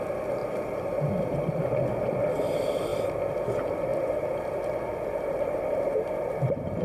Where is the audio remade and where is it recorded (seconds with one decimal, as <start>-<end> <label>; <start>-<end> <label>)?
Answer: 0.0-6.8 recorded